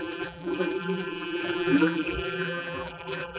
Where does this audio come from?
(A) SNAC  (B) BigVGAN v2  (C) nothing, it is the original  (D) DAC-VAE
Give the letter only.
B